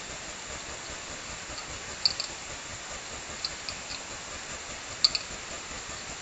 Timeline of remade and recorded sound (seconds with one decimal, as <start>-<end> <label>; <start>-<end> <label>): 0.0-6.2 recorded